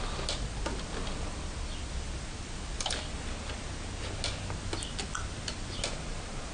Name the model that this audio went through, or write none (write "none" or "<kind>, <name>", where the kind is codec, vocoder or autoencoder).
none